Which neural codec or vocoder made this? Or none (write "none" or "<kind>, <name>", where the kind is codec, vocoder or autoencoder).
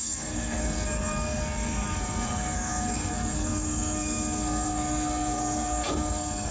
codec, SNAC